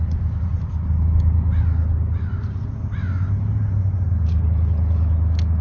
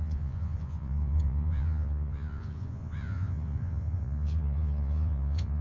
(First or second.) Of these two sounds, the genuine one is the first